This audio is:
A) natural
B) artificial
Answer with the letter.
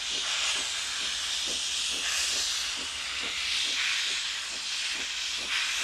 A